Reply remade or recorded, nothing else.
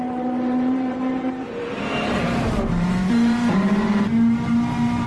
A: remade